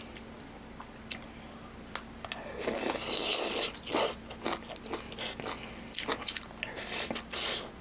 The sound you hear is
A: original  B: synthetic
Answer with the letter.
A